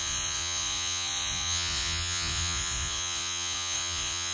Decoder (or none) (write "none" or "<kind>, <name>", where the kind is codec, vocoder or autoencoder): vocoder, Vocos